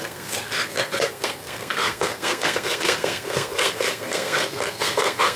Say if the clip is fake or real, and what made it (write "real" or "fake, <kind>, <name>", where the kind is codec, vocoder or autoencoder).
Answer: fake, codec, SNAC